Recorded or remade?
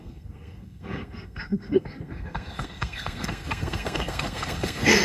remade